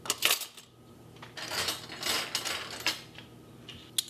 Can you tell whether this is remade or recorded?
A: recorded